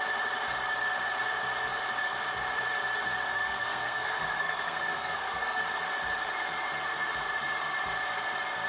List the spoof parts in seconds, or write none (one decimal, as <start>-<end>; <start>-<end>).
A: 3.3-5.6